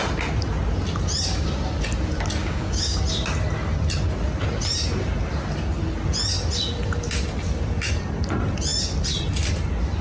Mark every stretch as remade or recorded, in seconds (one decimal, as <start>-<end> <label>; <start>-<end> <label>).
0.0-2.4 recorded; 2.4-3.0 remade; 3.0-10.0 recorded